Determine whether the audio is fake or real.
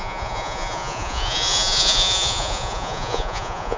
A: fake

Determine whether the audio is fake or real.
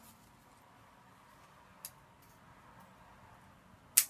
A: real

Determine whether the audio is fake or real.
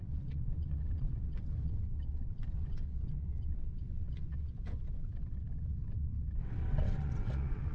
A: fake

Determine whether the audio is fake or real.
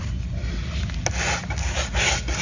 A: real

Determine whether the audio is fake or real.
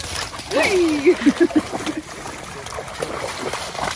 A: real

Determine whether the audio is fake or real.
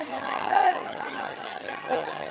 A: fake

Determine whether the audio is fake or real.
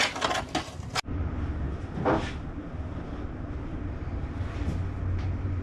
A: real